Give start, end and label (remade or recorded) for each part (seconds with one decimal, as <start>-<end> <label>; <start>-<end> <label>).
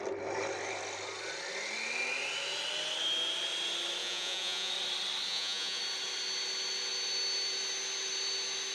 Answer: 0.0-4.0 recorded; 4.0-4.7 remade; 4.7-5.3 recorded; 5.3-5.8 remade; 5.8-8.7 recorded